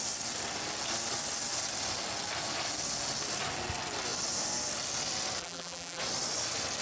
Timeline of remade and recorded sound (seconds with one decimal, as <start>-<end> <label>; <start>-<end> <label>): 0.0-5.4 recorded; 5.4-6.0 remade; 6.0-6.8 recorded